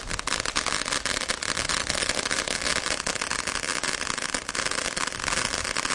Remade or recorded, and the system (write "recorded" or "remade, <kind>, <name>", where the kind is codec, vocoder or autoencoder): recorded